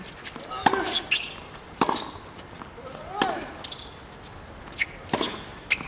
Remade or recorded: recorded